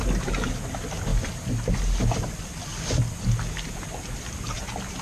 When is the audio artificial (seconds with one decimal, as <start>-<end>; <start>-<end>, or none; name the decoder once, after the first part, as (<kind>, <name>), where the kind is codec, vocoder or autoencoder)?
none